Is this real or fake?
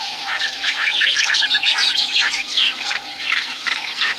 fake